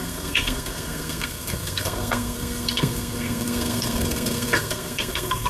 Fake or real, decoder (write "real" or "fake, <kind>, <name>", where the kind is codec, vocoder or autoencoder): fake, codec, SNAC